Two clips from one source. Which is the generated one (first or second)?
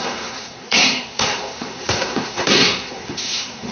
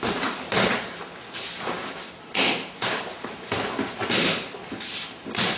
first